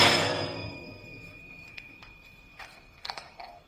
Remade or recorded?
remade